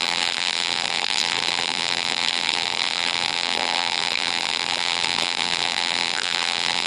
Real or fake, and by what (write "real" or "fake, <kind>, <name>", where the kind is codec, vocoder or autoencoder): fake, vocoder, BigVGAN v2